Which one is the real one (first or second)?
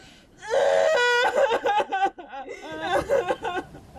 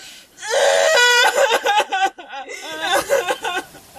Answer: first